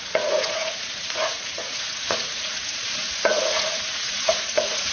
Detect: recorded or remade remade